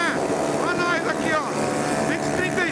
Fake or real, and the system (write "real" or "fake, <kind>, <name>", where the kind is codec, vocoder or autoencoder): real